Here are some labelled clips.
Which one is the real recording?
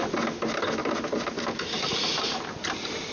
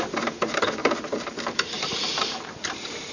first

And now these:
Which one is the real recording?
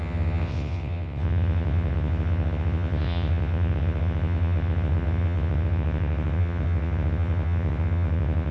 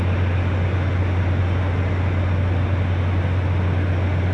second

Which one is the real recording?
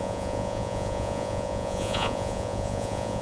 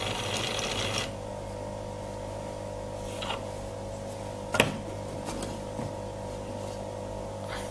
second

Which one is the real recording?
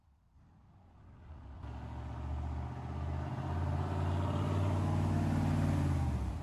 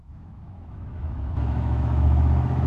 first